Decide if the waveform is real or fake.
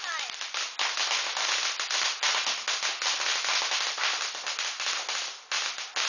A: real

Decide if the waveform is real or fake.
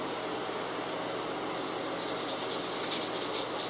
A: real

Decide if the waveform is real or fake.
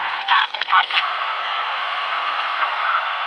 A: fake